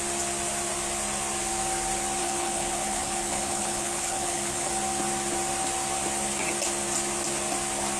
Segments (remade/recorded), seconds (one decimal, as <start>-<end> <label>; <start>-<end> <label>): 0.0-2.2 recorded; 2.2-4.7 remade; 4.7-8.0 recorded